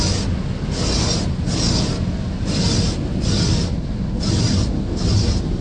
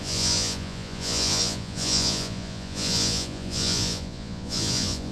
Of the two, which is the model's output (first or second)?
second